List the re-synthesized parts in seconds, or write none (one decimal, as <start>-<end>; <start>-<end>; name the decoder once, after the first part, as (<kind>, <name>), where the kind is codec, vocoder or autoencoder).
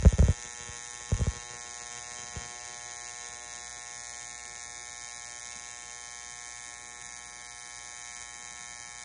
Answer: none